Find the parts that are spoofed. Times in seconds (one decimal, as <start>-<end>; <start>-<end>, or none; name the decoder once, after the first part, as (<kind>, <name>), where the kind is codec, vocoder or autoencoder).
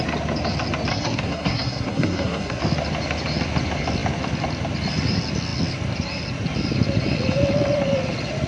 0.9-2.6 (codec, SNAC)